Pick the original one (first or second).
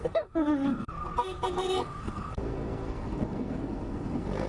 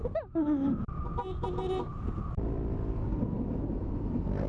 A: second